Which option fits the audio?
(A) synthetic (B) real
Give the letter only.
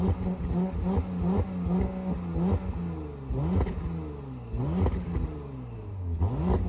B